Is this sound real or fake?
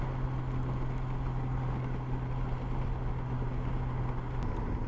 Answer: real